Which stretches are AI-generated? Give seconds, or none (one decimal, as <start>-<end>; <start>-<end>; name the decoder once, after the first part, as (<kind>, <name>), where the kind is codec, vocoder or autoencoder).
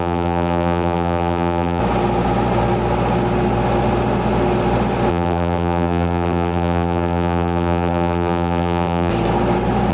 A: 0.0-1.8 (vocoder, BigVGAN v2); 5.1-9.1